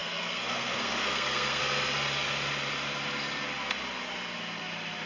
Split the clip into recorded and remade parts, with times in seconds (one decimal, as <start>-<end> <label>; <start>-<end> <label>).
0.0-1.6 remade; 1.6-5.1 recorded